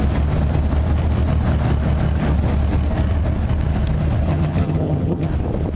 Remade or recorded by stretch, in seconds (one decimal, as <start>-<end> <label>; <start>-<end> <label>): 0.0-4.3 recorded; 4.3-5.3 remade; 5.3-5.8 recorded